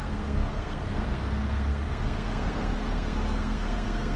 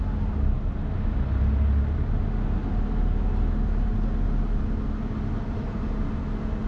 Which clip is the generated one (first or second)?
first